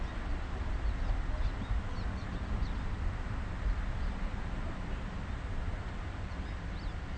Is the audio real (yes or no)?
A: yes